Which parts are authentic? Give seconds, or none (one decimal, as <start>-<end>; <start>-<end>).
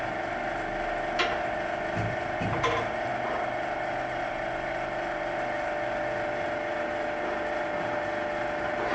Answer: 0.0-8.9